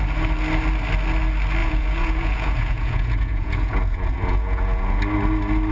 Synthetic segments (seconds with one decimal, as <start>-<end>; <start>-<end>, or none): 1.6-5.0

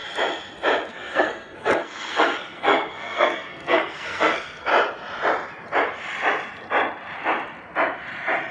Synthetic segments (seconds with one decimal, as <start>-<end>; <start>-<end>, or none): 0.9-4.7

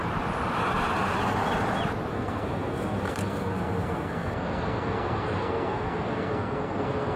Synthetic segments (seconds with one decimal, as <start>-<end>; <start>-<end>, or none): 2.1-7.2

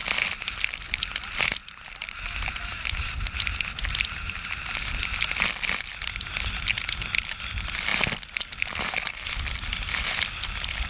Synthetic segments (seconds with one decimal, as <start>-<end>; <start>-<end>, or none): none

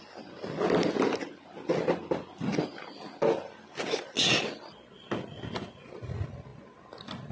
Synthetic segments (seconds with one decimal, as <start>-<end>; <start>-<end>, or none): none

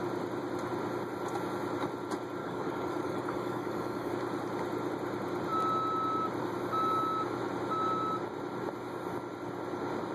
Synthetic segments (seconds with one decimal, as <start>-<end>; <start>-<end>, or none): 2.4-4.1

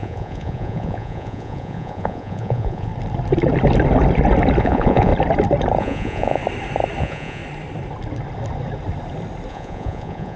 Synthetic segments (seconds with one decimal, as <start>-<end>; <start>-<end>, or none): 0.0-2.9; 4.6-5.1; 5.8-6.4; 7.0-7.4; 9.5-10.4

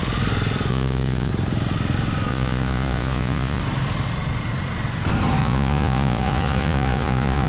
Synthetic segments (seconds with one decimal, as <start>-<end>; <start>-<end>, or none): 0.7-1.3; 2.3-3.6; 5.4-7.5